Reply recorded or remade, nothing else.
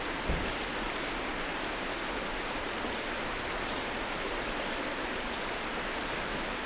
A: recorded